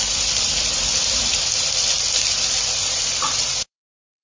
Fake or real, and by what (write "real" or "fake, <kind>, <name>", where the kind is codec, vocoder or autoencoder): fake, vocoder, BigVGAN v2